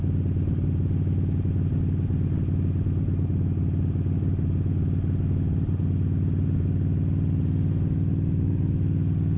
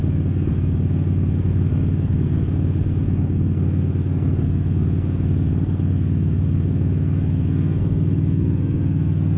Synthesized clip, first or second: second